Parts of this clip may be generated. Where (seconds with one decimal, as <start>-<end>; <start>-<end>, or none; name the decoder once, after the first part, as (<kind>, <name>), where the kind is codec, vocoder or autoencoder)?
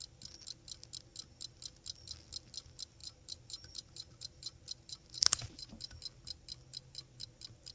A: 3.0-5.8 (vocoder, BigVGAN v2)